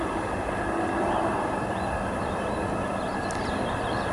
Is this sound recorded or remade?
remade